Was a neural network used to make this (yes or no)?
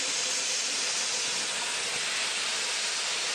no